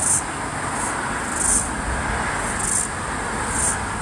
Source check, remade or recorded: recorded